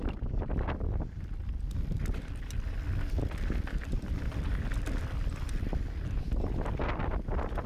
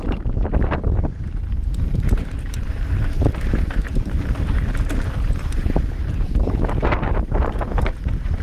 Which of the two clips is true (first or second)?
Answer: first